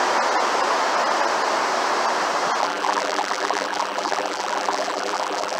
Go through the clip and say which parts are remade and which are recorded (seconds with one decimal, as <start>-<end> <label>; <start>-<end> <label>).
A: 0.0-2.6 recorded; 2.6-5.6 remade